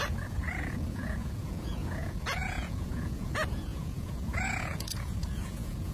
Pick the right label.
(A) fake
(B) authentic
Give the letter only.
A